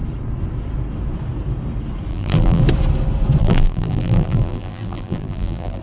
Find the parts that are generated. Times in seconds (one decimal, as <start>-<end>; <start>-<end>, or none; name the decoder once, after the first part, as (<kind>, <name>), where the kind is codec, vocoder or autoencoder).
2.1-2.6 (vocoder, BigVGAN v2); 3.4-5.8